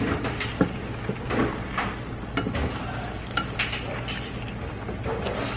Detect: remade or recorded recorded